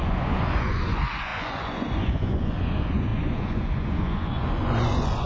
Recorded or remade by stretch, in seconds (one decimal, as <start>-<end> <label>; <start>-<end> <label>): 0.0-5.3 remade